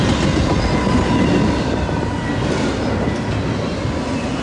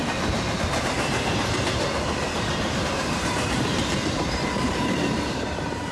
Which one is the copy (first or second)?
second